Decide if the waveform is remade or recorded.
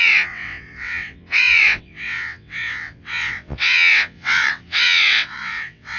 remade